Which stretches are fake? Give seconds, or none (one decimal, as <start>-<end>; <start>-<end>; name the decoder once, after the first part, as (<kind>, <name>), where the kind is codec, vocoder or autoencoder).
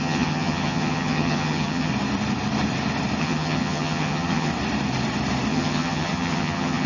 0.0-1.9 (vocoder, HiFi-GAN); 3.2-4.5; 5.5-6.9